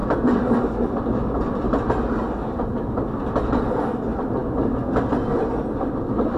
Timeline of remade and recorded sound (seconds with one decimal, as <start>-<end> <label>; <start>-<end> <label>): 0.0-6.4 recorded